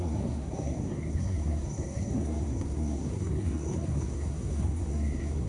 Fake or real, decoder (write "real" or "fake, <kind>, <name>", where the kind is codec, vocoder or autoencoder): fake, codec, SNAC